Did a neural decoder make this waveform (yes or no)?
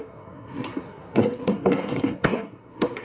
yes